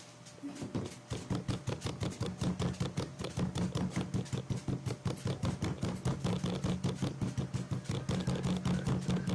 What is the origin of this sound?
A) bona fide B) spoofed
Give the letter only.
A